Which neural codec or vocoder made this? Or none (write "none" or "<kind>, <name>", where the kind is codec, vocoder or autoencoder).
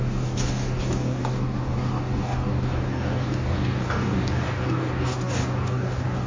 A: codec, DAC